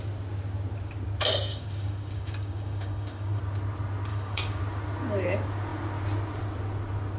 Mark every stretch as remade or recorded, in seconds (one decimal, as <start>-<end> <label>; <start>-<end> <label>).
0.0-1.5 recorded; 1.5-3.4 remade; 3.4-4.1 recorded; 4.1-4.6 remade; 4.6-7.2 recorded